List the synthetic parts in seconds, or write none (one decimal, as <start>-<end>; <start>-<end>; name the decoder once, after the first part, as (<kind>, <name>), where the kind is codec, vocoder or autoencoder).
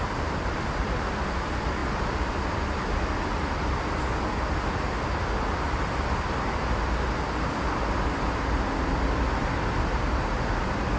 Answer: none